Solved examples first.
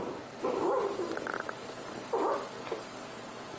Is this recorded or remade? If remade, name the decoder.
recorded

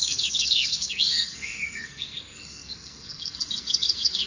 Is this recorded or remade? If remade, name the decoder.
remade, codec, SNAC